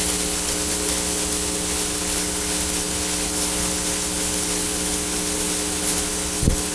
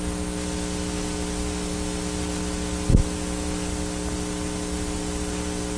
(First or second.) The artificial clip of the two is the first